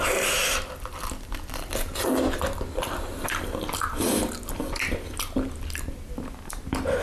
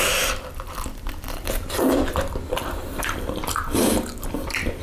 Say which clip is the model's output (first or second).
second